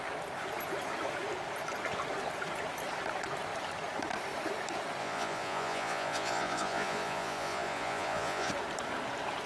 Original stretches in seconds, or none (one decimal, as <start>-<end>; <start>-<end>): 0.0-5.0; 8.5-9.5